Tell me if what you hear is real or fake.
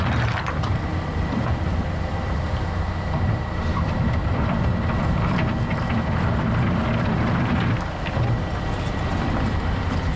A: fake